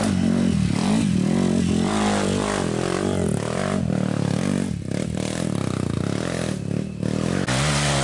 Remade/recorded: recorded